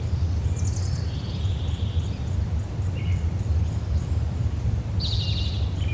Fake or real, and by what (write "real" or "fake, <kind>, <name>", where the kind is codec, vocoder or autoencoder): real